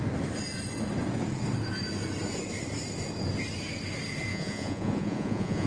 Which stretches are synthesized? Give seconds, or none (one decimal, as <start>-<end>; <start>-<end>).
4.3-5.7